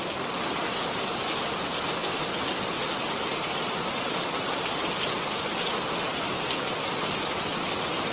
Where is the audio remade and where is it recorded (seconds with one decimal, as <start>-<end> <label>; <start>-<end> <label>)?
0.0-8.1 recorded